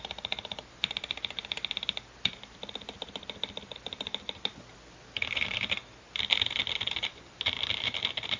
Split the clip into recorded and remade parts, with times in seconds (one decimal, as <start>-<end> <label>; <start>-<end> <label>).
0.0-1.4 remade; 1.4-2.3 recorded; 2.3-4.5 remade; 4.5-5.2 recorded; 5.2-8.4 remade